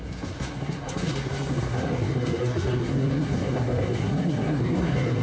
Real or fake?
fake